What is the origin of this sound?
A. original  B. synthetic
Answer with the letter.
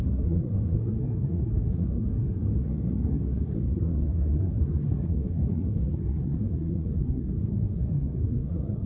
B